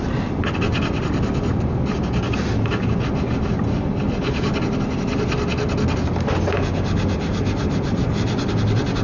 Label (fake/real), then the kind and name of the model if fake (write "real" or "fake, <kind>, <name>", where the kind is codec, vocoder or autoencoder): real